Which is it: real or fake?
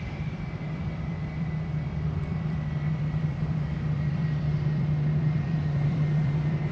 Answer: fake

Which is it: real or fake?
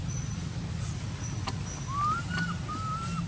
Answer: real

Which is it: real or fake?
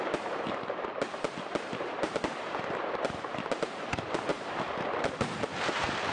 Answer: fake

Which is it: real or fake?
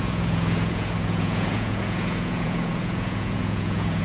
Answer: fake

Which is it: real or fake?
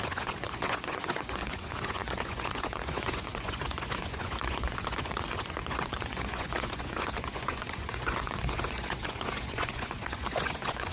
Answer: fake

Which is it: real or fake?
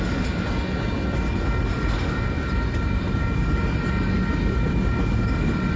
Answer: real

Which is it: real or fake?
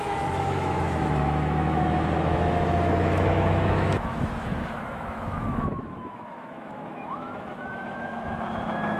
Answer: fake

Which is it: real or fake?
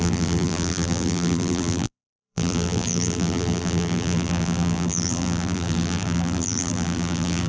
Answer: fake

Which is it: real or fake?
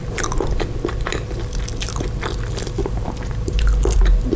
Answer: real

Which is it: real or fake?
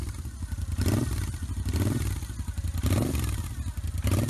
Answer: fake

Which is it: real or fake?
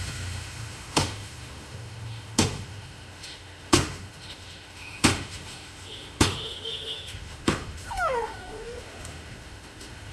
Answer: fake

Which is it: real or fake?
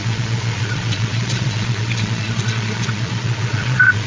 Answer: fake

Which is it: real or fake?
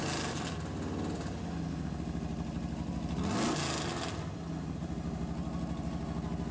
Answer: real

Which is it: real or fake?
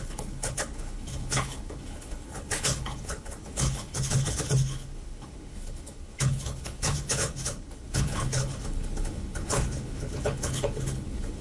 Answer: fake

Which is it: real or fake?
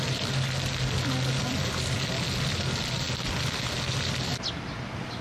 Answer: real